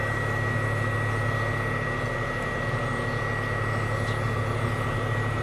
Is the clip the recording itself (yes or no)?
yes